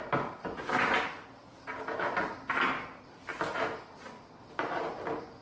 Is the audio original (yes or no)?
yes